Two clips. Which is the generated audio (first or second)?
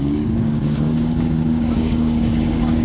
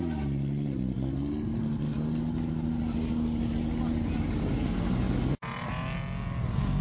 first